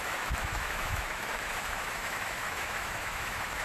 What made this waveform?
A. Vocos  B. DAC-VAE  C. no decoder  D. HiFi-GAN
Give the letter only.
B